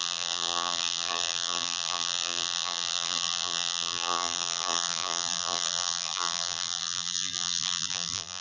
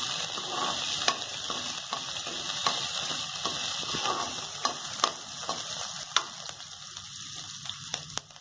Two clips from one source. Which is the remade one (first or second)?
first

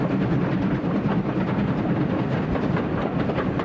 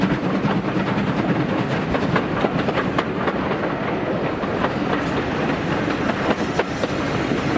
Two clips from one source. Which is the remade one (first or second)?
first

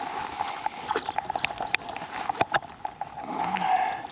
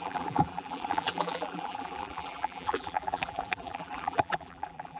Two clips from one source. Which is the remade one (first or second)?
second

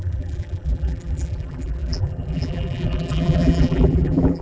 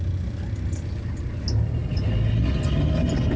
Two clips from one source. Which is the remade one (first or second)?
first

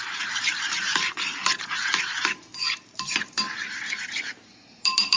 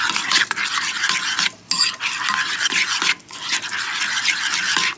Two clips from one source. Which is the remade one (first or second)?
first